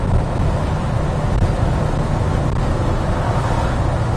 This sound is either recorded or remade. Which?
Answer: recorded